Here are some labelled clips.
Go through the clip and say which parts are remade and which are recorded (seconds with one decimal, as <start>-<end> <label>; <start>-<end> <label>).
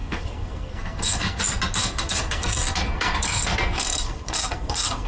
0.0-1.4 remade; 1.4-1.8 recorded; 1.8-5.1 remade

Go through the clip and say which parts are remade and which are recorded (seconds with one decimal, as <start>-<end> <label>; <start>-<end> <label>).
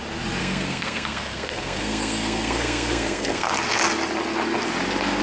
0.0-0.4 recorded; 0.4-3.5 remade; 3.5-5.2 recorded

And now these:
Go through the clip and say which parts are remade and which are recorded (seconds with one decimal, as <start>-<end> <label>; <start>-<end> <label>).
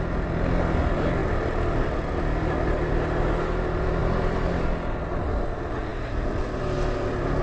0.0-7.4 recorded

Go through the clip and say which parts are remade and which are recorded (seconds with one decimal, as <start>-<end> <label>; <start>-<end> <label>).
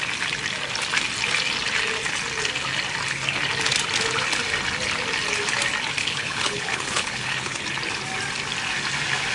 0.0-6.0 recorded; 6.0-7.6 remade; 7.6-9.3 recorded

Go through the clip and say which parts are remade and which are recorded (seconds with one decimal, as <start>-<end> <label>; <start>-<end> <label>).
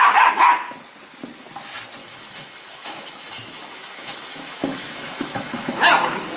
0.0-2.0 recorded; 2.0-5.8 remade; 5.8-6.4 recorded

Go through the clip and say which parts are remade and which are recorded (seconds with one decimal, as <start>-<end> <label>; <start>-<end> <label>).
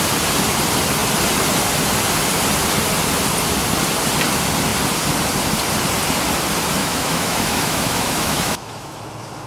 0.0-6.8 recorded; 6.8-9.0 remade; 9.0-9.5 recorded